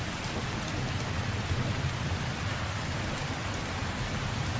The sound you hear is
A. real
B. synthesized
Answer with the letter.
A